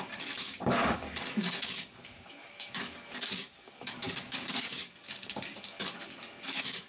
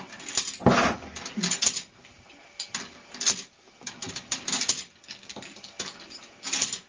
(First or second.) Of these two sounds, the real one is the second